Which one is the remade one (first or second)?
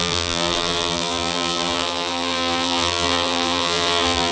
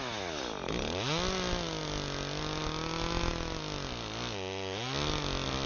first